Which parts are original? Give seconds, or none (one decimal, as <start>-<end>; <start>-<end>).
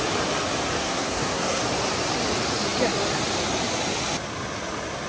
0.0-0.8; 1.6-5.1